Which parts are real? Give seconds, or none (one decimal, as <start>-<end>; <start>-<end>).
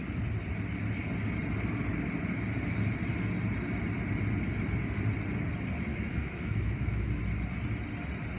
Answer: 0.0-5.9; 7.2-8.4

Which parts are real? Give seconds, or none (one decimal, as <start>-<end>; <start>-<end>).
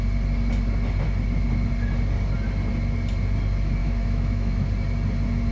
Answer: 0.0-3.8; 4.7-5.5